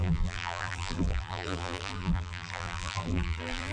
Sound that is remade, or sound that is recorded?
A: remade